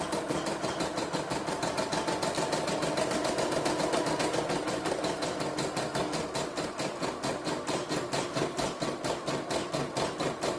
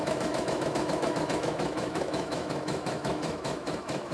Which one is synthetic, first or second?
second